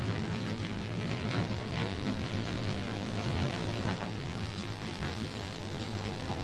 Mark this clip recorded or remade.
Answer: remade